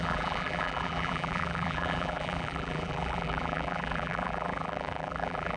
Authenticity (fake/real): fake